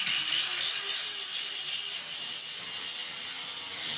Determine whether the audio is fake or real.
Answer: real